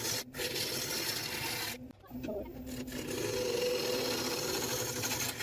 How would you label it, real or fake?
real